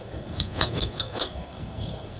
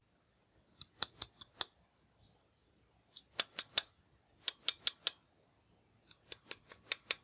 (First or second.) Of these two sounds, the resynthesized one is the first